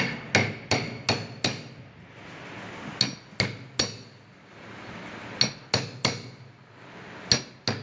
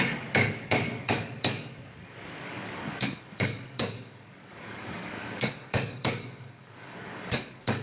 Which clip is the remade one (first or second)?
second